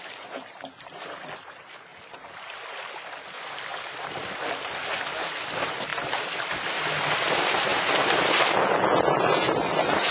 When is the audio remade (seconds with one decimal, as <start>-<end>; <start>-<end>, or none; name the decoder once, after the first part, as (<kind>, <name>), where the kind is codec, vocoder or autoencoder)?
none